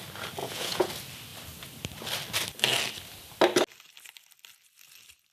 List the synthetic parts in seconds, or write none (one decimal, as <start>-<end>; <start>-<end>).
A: 0.4-0.9